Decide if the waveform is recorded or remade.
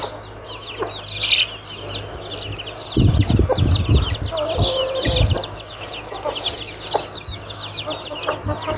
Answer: recorded